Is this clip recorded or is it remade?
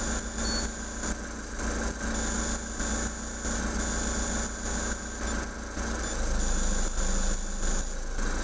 recorded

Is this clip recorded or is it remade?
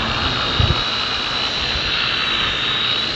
recorded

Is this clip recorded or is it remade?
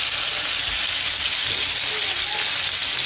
recorded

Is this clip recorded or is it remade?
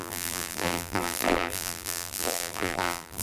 remade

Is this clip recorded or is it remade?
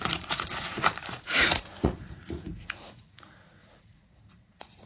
remade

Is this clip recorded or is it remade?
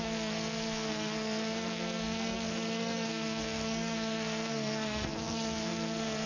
remade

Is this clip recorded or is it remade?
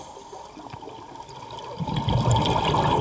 recorded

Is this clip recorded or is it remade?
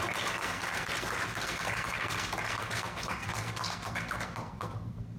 remade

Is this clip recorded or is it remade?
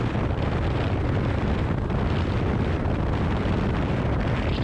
recorded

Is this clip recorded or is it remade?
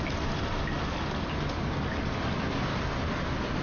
recorded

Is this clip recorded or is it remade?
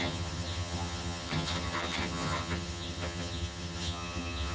remade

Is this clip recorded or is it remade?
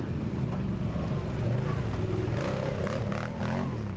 recorded